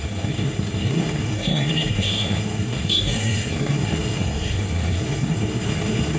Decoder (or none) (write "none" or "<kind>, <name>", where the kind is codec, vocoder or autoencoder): codec, SNAC